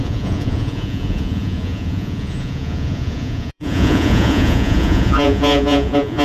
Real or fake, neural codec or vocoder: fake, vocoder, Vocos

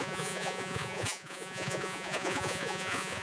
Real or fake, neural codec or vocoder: fake, vocoder, Vocos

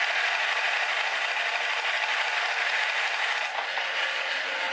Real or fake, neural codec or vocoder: real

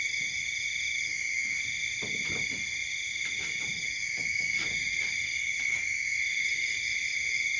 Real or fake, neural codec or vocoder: real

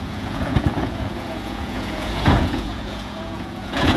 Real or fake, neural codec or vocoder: fake, vocoder, Vocos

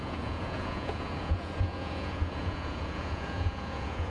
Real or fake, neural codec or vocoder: fake, vocoder, Vocos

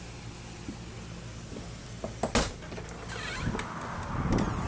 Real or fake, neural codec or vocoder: real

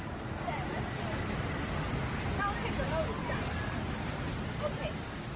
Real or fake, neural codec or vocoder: real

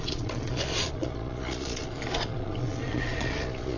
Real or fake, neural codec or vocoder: fake, vocoder, Vocos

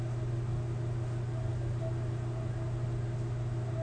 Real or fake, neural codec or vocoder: real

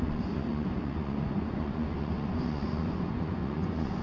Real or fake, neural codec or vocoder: fake, vocoder, Vocos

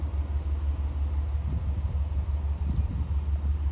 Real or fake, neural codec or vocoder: real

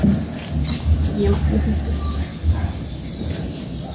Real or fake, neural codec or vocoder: real